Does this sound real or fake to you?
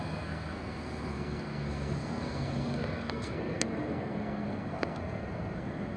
fake